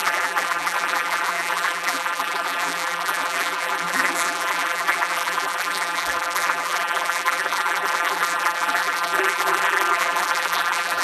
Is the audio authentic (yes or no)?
no